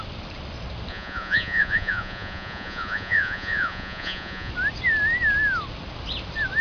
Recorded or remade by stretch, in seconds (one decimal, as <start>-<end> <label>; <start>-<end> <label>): 0.0-0.9 recorded; 0.9-4.5 remade; 4.5-6.6 recorded